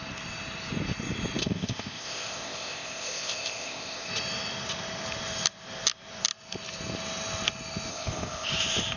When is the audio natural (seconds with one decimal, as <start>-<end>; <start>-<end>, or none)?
0.0-1.4; 4.1-7.9; 8.5-9.0